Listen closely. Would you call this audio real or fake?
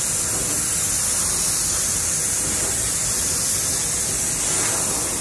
real